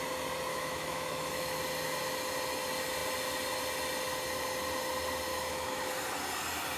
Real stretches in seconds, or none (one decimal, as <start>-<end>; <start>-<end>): 0.0-0.5; 1.6-5.3; 5.9-6.8